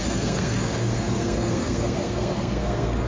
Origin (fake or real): fake